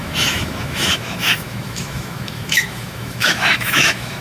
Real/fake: fake